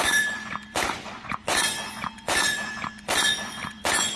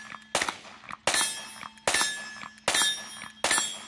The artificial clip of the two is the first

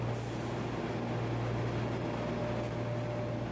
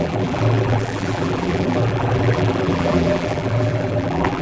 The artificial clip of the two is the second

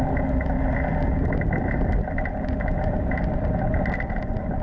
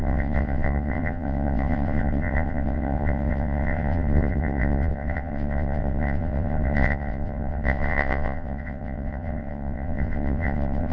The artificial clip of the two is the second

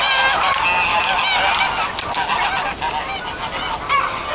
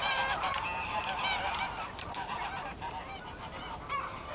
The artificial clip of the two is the second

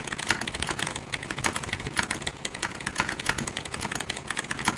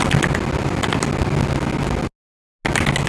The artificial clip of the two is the first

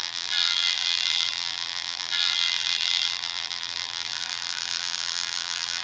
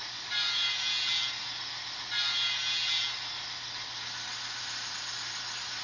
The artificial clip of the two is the first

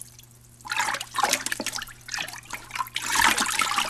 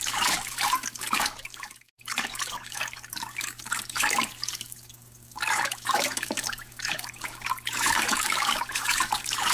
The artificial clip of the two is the second